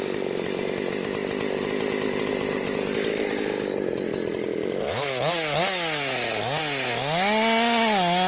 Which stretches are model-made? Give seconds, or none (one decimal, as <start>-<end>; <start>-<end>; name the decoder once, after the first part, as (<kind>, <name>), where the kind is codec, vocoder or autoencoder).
none